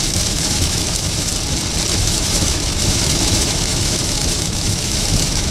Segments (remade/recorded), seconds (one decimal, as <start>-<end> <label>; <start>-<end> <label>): 0.0-1.3 remade; 1.3-1.9 recorded; 1.9-5.5 remade